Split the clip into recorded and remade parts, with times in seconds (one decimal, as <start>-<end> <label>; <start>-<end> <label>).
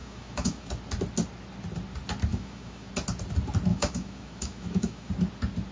0.0-0.7 remade; 0.7-2.3 recorded; 2.3-2.9 remade; 2.9-3.7 recorded; 3.7-5.1 remade; 5.1-5.7 recorded